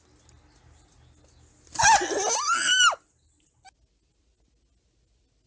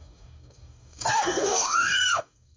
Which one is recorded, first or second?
first